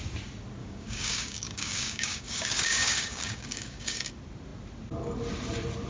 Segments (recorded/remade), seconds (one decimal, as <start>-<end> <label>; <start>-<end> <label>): 0.0-0.6 recorded; 0.6-4.1 remade; 4.1-5.9 recorded